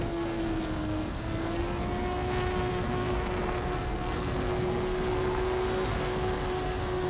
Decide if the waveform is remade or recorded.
remade